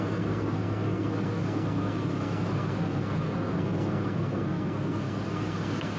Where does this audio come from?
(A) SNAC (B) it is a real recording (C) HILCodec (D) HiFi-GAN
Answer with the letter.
A